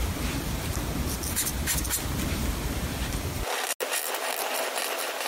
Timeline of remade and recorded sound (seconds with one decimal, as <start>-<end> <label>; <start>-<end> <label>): 0.0-5.3 recorded